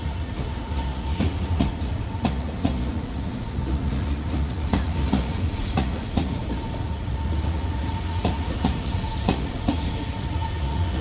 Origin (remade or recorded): remade